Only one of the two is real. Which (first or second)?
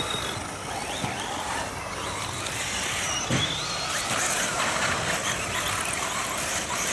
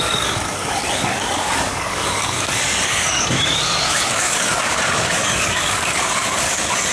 first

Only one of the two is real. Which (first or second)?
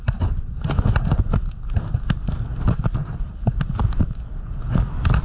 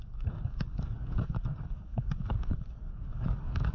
first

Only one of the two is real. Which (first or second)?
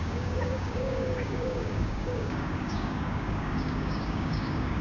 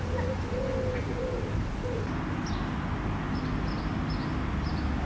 second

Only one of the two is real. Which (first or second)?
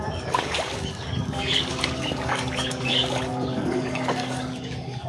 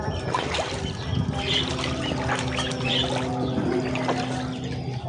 second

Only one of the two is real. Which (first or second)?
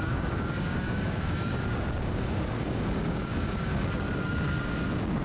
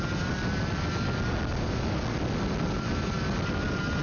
second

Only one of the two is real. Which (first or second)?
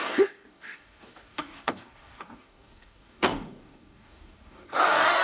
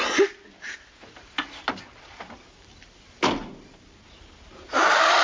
second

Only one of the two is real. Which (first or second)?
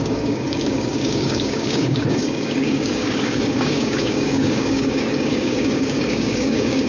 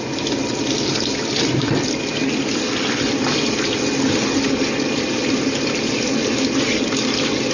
second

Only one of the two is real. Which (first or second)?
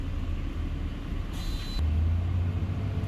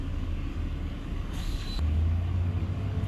first